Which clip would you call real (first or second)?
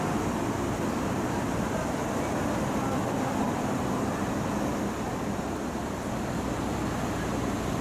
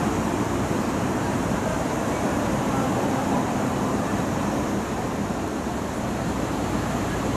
first